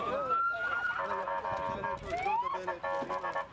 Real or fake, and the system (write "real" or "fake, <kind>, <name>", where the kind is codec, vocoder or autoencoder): real